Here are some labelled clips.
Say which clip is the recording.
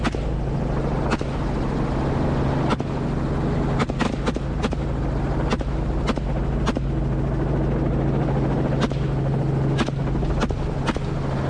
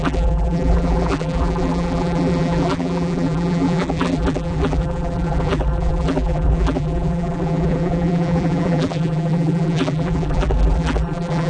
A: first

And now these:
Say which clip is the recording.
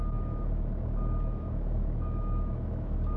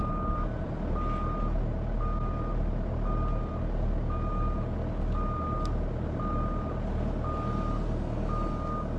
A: second